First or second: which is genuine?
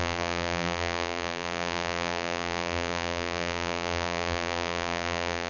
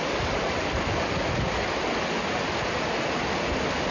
second